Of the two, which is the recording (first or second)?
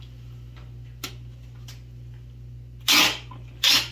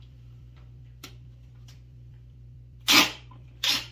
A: first